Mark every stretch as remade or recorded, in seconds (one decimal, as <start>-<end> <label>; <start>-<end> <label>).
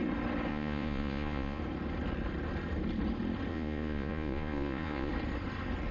0.0-0.5 recorded; 0.5-1.6 remade; 1.6-3.5 recorded; 3.5-5.1 remade; 5.1-5.9 recorded